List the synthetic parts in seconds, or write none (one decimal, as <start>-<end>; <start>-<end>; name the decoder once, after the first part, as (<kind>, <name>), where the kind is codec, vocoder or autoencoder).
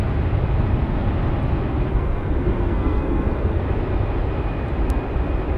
1.9-3.6 (codec, SNAC)